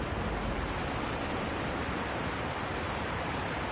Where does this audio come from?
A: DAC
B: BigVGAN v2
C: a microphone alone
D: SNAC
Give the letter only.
B